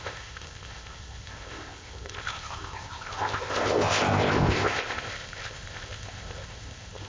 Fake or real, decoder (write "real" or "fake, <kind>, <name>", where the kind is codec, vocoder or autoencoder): fake, codec, ZipCodec